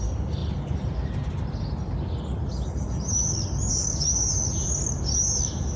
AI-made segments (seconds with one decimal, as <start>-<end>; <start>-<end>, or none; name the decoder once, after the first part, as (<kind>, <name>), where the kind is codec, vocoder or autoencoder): none